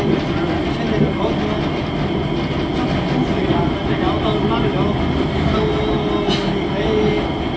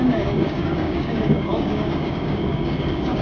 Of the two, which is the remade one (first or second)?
second